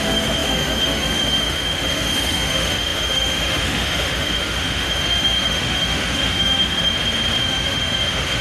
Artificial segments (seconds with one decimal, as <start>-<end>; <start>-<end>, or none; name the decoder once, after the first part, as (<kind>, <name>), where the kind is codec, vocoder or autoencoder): 0.0-6.9 (autoencoder, DAC-VAE); 7.4-8.4